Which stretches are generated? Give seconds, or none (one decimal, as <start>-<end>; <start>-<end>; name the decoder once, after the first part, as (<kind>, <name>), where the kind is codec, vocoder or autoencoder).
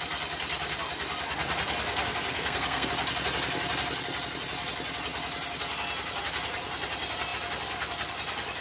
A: 2.3-2.9 (codec, SNAC)